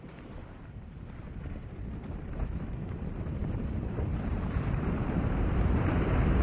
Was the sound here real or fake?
fake